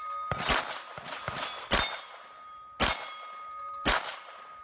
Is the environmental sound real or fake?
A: real